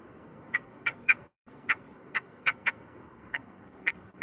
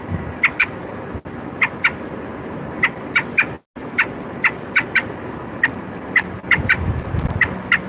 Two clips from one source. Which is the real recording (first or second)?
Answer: second